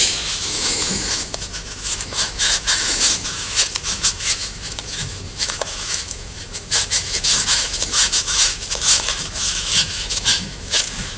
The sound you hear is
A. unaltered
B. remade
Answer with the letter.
B